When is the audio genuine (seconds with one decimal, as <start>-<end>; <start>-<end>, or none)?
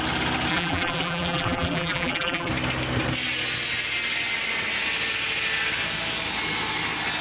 0.0-0.5; 2.5-7.2